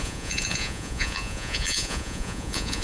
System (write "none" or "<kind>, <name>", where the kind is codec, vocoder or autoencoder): vocoder, Vocos